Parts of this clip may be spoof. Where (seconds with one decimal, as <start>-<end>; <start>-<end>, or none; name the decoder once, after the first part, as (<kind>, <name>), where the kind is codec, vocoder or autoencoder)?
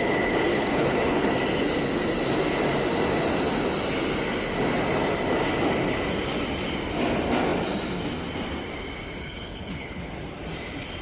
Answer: 0.5-1.3 (codec, HILCodec); 9.2-10.1